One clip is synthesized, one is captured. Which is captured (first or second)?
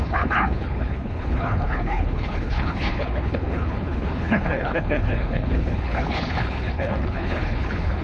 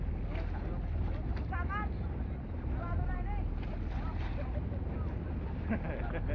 second